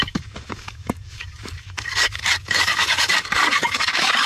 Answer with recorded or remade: remade